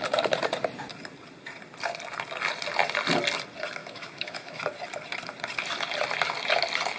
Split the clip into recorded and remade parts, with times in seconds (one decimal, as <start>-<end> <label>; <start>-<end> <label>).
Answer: 0.0-3.8 recorded; 3.8-4.6 remade; 4.6-7.0 recorded